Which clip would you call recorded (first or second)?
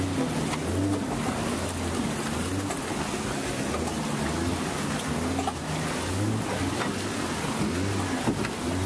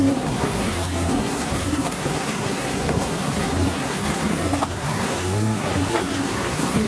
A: first